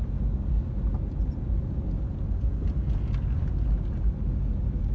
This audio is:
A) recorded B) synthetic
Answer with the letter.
A